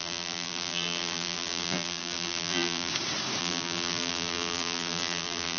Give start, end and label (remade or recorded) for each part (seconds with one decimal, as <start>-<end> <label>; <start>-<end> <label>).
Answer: 0.0-2.9 remade; 2.9-3.4 recorded; 3.4-5.6 remade